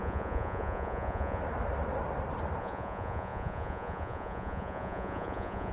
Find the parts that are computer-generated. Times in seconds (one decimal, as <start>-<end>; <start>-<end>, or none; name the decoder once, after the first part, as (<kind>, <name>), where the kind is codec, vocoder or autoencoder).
0.0-1.4 (vocoder, Vocos); 2.6-5.7